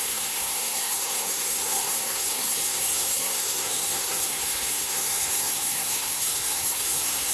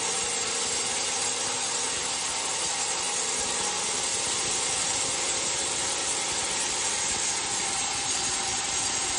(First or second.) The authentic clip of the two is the second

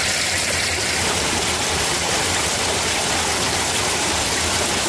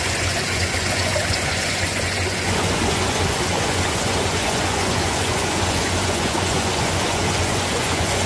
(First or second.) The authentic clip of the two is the first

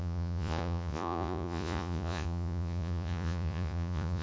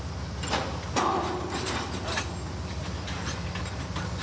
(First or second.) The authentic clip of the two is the second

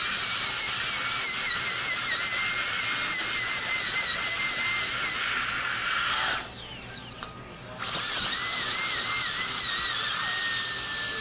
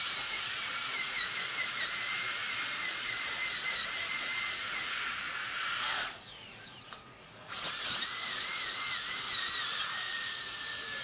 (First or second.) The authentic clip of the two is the first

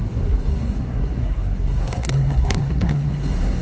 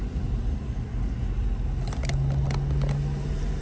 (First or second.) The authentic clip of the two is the second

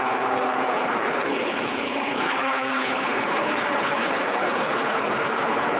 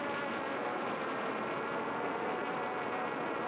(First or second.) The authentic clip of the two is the second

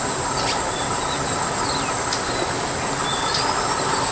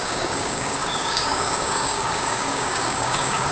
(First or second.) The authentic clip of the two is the first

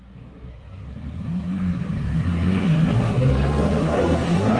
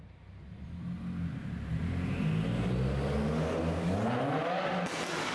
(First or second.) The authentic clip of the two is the second